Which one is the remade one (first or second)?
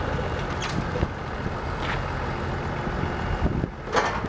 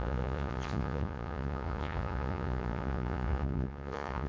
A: second